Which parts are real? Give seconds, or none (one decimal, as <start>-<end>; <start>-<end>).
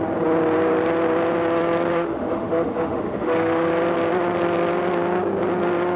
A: 0.0-1.9; 3.7-6.0